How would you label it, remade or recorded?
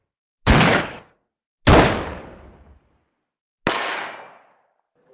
recorded